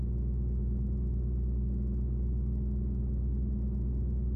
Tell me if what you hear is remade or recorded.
recorded